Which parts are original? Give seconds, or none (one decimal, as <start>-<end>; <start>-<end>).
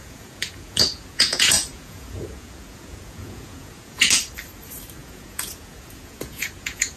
4.2-5.0